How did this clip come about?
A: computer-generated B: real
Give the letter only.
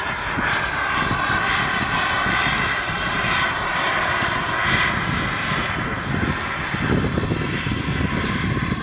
B